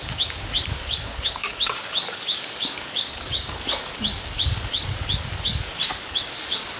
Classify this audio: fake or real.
fake